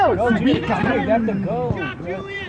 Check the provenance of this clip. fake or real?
fake